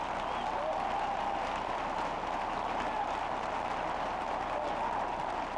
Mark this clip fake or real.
real